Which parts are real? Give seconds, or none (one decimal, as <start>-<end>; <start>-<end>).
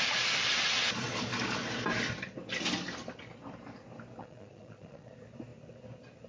0.0-4.2; 5.1-6.3